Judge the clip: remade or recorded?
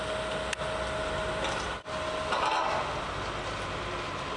recorded